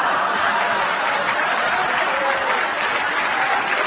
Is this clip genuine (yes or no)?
yes